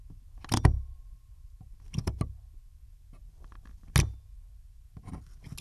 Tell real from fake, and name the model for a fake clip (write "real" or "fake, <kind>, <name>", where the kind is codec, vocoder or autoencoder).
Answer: real